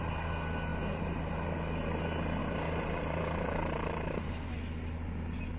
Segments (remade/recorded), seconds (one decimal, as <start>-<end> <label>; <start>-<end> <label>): 0.0-0.7 recorded; 0.7-1.3 remade; 1.3-2.4 recorded; 2.4-4.3 remade; 4.3-5.6 recorded